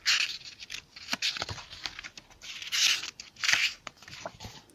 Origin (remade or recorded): recorded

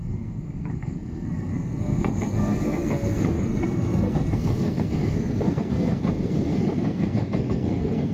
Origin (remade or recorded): remade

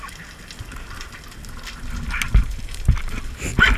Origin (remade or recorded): recorded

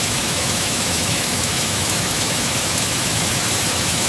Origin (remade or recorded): remade